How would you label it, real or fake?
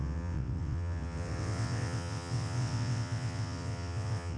fake